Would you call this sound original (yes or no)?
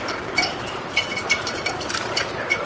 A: yes